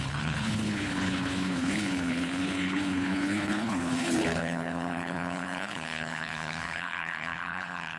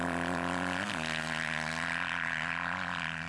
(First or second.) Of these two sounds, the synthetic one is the first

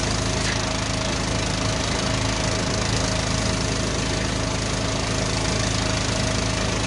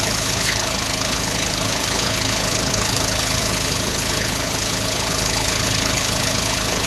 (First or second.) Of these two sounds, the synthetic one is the second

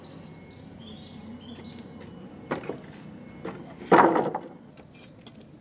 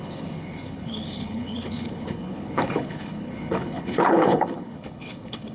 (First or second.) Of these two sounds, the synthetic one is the second